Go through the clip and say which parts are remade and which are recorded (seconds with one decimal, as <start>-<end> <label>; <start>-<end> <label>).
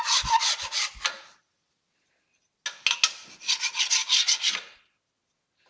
0.0-5.7 recorded